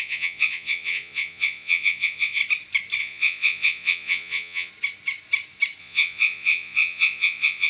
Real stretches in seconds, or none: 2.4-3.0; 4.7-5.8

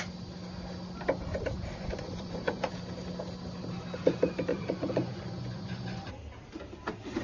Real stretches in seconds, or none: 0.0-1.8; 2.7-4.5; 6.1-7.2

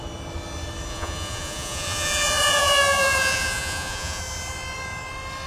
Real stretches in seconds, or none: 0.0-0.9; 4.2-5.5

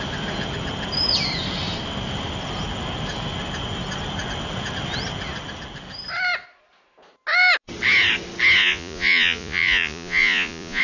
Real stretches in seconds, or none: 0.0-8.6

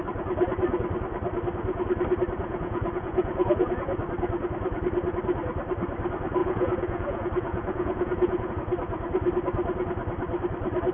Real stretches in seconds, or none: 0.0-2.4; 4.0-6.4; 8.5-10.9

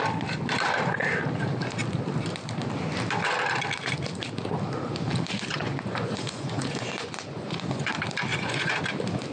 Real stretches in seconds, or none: 0.0-5.5; 7.9-8.3; 8.8-9.3

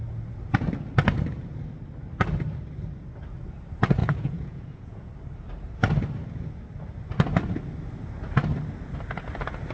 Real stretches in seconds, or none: 0.0-4.0; 5.1-9.7

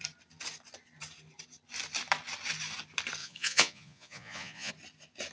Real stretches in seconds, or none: 0.0-3.2; 4.7-5.3